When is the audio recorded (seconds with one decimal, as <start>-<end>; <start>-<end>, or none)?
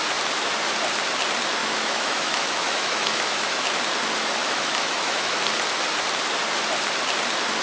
0.0-1.6; 3.8-4.4; 5.4-7.6